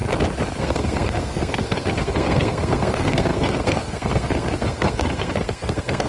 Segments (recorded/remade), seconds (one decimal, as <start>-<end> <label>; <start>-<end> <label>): 0.0-0.6 recorded; 0.6-6.1 remade